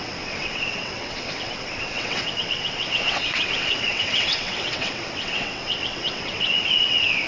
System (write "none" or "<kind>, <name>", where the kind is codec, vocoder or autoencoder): vocoder, WaveNeXt